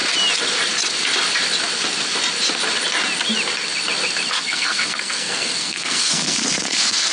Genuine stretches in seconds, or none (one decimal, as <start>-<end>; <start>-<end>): 0.0-4.3